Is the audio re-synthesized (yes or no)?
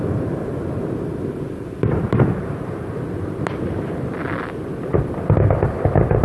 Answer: yes